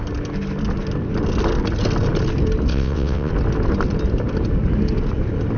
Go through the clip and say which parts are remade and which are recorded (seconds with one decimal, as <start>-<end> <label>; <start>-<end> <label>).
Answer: 0.0-2.7 recorded; 2.7-3.3 remade; 3.3-5.6 recorded